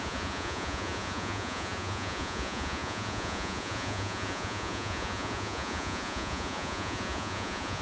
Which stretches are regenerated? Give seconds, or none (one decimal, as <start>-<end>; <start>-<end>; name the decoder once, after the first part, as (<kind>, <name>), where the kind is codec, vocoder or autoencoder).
0.0-7.8 (vocoder, Vocos)